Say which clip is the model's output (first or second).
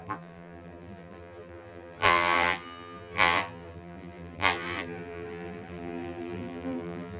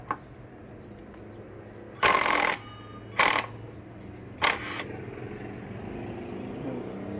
first